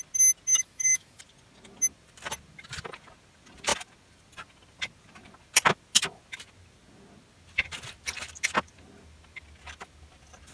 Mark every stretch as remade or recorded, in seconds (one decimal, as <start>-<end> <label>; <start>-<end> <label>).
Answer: 0.0-0.5 recorded; 0.5-1.2 remade; 1.2-10.5 recorded